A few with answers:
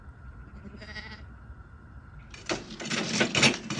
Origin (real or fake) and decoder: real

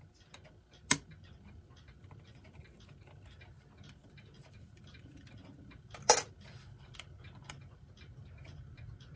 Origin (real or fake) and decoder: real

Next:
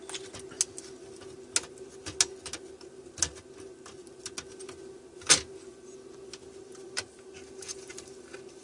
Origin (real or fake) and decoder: real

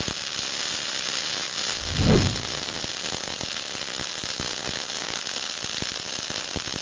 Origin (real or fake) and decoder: real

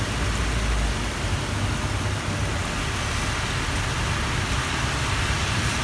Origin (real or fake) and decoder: real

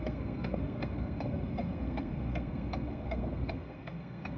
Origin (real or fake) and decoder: fake, codec, SNAC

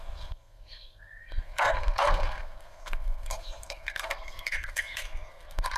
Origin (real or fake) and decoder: fake, codec, SNAC